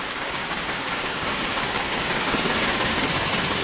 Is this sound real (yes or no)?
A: no